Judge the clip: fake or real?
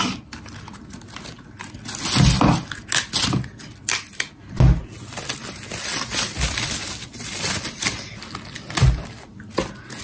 real